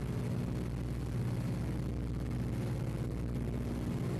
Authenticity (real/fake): real